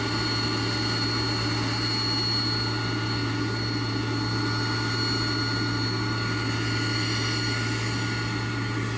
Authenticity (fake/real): real